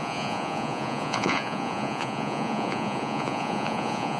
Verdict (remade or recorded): remade